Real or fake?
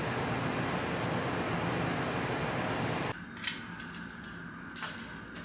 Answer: real